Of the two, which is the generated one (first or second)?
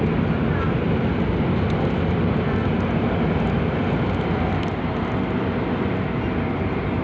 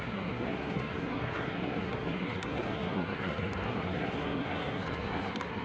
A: second